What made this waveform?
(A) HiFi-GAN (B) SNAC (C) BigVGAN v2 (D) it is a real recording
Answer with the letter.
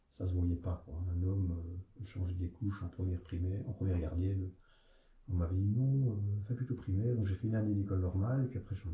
D